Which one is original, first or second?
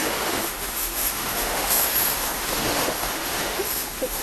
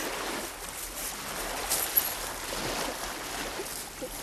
second